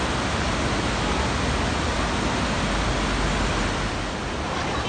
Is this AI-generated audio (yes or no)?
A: no